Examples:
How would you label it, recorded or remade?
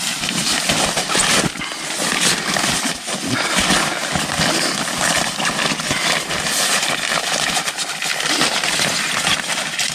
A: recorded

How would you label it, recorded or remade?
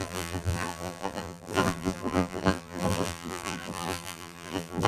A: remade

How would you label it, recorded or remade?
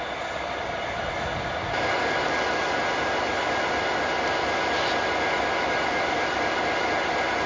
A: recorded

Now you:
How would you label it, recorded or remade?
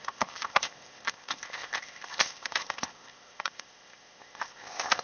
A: remade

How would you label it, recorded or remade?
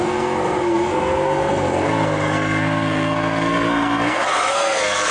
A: remade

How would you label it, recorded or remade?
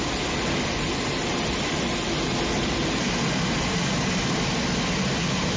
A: recorded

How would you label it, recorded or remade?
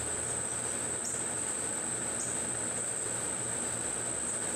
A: remade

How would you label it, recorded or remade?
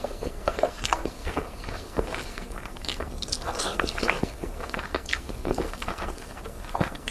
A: remade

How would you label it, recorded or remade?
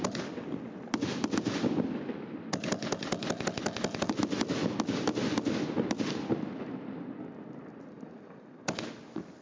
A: recorded